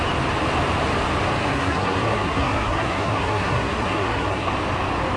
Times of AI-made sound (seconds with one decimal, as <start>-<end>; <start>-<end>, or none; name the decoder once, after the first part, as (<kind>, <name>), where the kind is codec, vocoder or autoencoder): 1.4-4.5 (codec, SNAC)